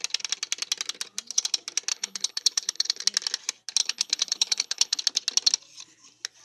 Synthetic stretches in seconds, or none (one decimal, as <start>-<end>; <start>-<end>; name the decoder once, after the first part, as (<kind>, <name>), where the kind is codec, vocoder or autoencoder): 1.9-3.0 (codec, HILCodec); 3.8-5.0